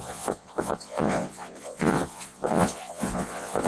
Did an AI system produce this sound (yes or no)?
yes